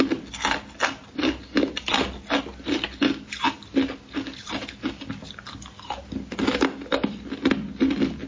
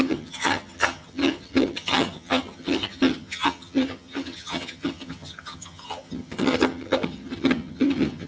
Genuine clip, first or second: first